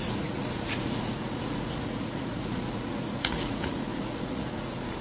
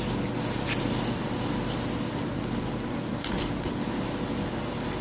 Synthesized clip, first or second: first